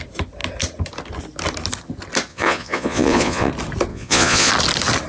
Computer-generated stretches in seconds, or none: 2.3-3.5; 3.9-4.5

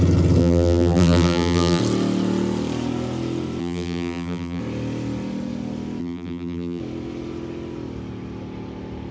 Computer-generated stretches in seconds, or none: 0.4-1.8; 3.6-4.6; 6.0-6.8